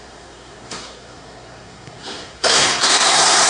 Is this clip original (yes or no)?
no